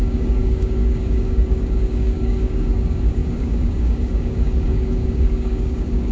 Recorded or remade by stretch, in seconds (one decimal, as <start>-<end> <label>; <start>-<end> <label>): 0.0-6.1 remade